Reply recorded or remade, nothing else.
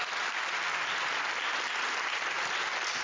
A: recorded